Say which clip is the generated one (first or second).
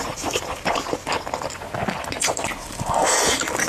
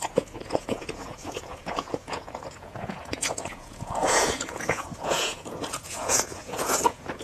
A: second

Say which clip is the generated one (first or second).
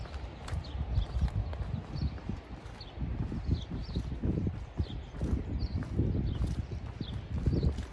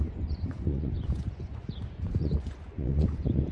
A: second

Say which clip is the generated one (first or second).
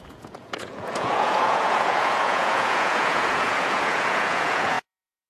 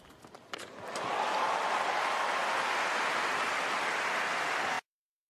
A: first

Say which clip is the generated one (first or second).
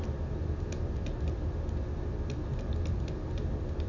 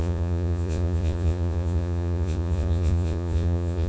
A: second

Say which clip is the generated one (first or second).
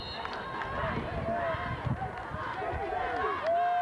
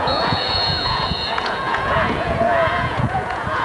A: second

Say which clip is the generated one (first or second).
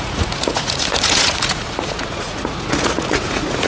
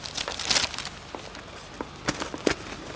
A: first